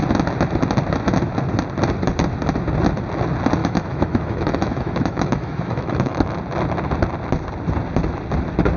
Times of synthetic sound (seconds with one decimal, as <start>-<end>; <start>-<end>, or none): 3.6-6.4